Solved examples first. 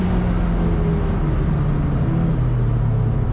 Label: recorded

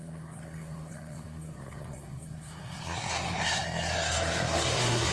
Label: remade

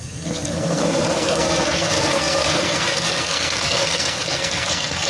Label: remade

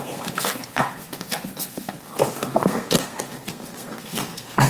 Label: remade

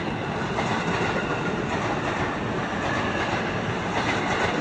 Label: recorded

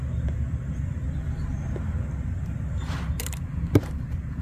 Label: recorded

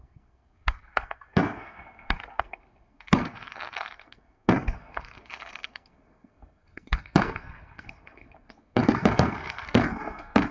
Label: remade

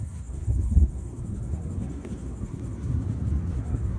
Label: remade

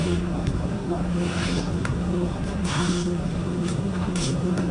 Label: remade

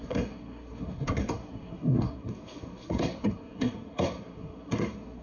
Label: remade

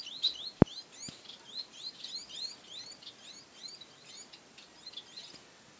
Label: recorded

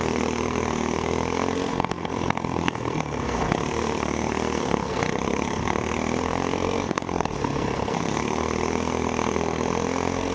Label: remade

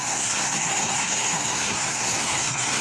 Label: remade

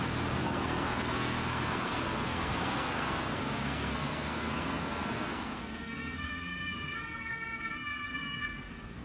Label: remade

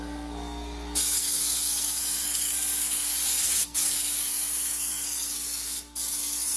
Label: remade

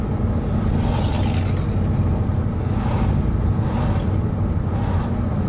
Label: recorded